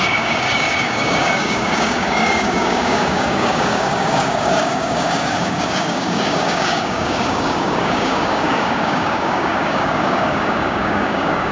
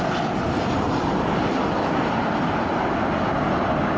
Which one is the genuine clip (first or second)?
second